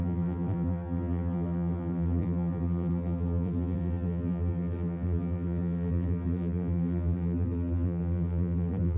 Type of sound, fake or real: fake